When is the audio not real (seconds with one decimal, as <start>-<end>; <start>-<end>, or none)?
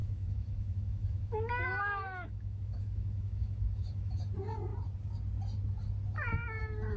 0.0-4.2